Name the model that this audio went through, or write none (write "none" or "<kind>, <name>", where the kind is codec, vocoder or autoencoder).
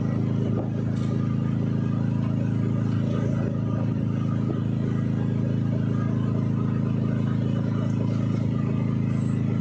none